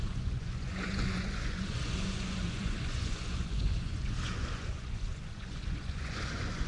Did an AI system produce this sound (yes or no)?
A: yes